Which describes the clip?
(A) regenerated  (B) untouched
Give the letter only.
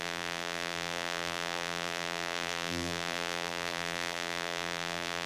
A